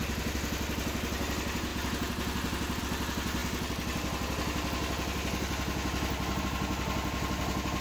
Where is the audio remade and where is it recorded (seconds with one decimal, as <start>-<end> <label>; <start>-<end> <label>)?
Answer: 0.0-7.8 recorded